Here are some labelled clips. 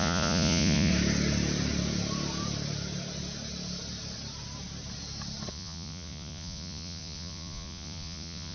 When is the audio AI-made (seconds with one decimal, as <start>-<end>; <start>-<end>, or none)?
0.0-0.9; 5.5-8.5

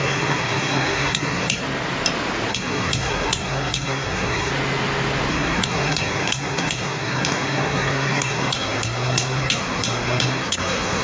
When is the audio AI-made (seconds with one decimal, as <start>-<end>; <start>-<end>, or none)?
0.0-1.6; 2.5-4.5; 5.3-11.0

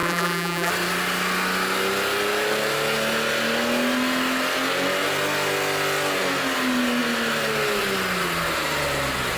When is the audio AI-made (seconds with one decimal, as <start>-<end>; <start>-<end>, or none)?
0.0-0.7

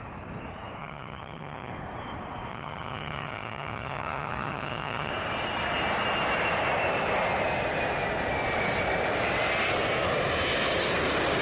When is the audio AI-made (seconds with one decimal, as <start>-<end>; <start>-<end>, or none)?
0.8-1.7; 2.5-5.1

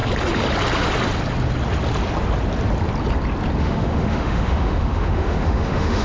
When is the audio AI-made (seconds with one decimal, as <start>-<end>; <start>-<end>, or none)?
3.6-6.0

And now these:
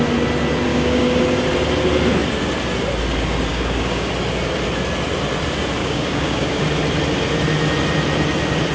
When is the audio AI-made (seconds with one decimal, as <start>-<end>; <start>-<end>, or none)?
0.7-1.2; 3.5-4.1; 5.8-6.6